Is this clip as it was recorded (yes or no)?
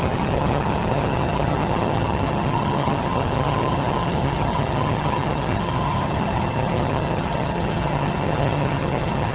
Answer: no